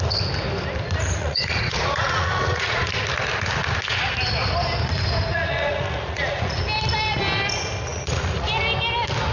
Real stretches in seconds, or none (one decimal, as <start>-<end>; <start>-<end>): 0.0-1.2; 2.9-5.3; 6.6-7.9; 8.5-9.3